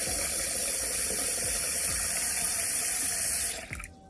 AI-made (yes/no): no